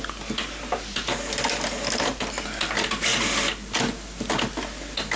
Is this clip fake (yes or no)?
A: no